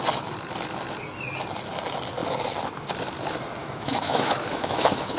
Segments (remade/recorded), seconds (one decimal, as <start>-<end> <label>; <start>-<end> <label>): 0.0-3.6 recorded; 3.6-5.2 remade

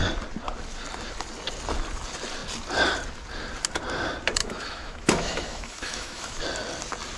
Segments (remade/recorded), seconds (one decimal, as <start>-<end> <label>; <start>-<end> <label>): 0.0-4.4 recorded; 4.4-6.4 remade; 6.4-7.2 recorded